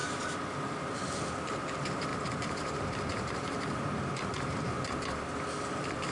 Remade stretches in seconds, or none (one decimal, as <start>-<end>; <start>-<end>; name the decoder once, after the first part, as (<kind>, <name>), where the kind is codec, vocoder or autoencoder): 2.1-4.7 (vocoder, BigVGAN v2)